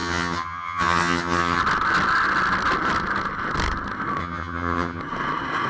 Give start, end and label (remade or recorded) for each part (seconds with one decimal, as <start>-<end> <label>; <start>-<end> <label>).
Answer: 0.0-1.6 remade; 1.6-4.2 recorded; 4.2-5.0 remade; 5.0-5.7 recorded